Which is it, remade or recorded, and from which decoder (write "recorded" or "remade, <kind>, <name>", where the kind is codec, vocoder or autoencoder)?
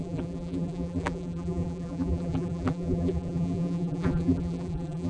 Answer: remade, vocoder, BigVGAN v2